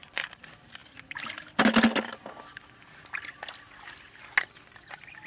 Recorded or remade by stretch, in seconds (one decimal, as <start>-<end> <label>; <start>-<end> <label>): 0.0-5.3 recorded